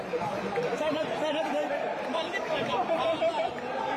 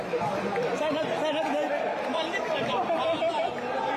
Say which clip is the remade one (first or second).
first